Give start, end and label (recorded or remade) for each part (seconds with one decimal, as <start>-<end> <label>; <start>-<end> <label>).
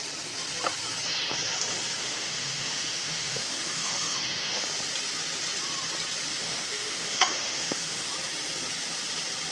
0.0-2.0 recorded; 2.0-4.6 remade; 4.6-6.3 recorded; 6.3-8.1 remade; 8.1-9.5 recorded